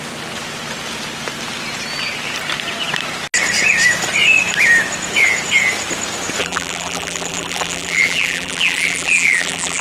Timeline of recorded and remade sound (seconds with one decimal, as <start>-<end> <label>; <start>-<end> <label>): 0.0-6.4 recorded; 6.4-9.8 remade